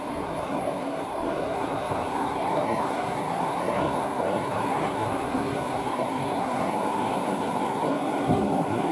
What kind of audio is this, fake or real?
fake